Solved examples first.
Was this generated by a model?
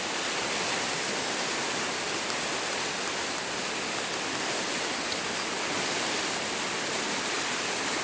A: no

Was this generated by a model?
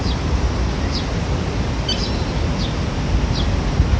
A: no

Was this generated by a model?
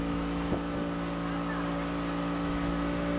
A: no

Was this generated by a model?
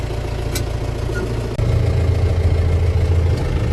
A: no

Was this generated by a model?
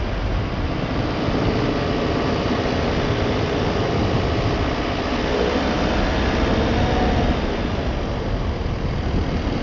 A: no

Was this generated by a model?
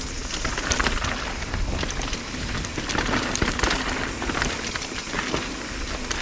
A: no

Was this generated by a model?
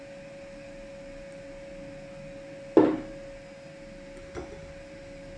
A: no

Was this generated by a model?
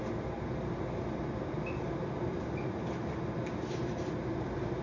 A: no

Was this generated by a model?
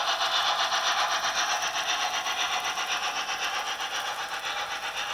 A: no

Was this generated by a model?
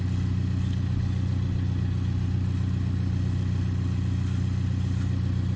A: no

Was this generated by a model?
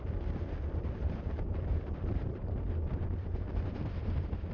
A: yes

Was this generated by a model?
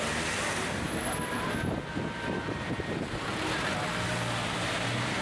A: no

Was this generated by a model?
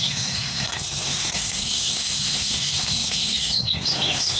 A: yes